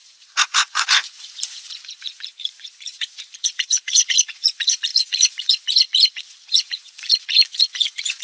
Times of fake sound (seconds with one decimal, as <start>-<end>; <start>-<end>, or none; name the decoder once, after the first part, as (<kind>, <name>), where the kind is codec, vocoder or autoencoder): 0.0-8.2 (vocoder, Vocos)